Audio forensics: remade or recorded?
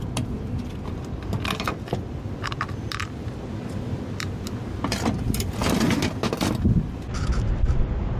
recorded